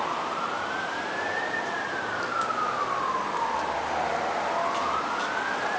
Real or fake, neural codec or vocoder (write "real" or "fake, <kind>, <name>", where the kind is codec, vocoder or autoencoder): fake, vocoder, BigVGAN v2